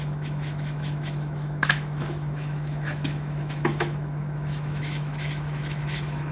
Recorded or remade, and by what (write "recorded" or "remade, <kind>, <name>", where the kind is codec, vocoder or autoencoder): remade, autoencoder, DAC-VAE